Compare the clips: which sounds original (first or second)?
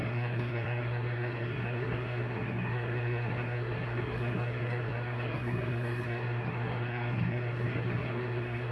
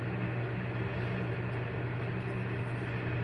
second